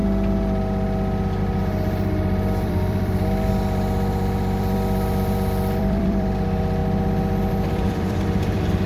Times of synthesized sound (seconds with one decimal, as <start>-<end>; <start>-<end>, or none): 1.4-6.8; 7.5-8.9